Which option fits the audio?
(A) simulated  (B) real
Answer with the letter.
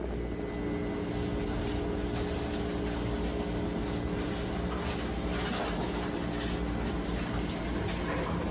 B